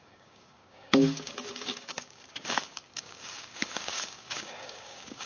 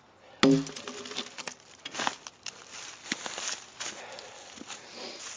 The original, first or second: second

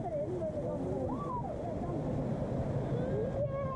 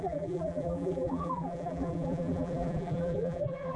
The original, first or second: first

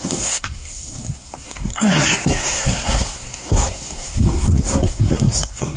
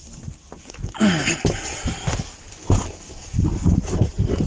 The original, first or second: second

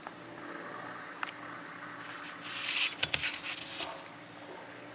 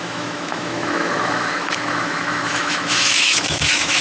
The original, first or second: first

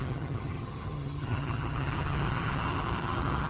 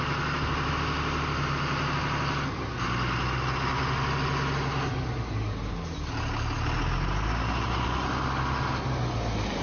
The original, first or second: second